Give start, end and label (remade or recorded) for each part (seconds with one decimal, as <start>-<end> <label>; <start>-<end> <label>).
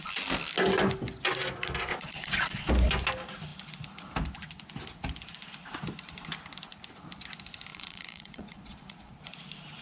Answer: 0.0-1.9 recorded; 1.9-2.7 remade; 2.7-7.7 recorded; 7.7-9.1 remade; 9.1-9.8 recorded